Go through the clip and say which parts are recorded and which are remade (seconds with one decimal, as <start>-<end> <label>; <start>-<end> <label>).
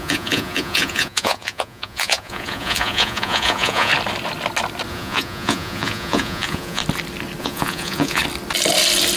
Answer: 0.0-3.9 remade; 3.9-4.9 recorded; 4.9-6.8 remade; 6.8-7.4 recorded; 7.4-8.2 remade; 8.2-9.2 recorded